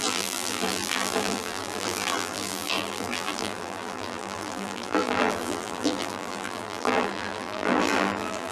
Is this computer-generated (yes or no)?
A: yes